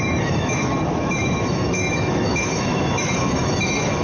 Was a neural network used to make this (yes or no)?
yes